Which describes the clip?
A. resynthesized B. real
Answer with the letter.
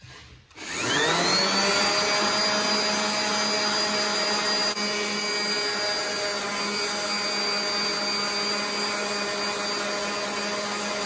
B